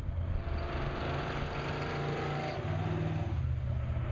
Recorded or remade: recorded